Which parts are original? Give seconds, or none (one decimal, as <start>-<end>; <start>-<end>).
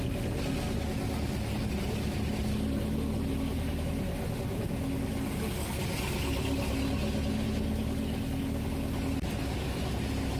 0.0-10.4